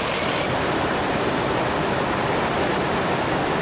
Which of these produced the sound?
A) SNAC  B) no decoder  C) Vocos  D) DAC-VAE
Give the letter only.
B